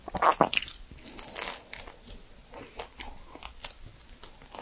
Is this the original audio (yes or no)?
yes